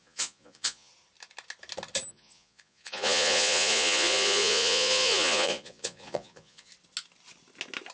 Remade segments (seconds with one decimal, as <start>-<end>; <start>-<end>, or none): 0.0-0.9; 2.1-6.7